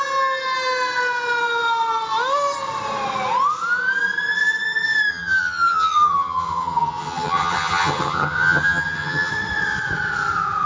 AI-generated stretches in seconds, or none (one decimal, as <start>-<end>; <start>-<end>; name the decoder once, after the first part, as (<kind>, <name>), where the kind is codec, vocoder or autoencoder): 5.1-9.3 (vocoder, HiFi-GAN)